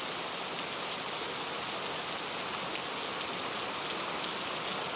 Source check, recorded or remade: recorded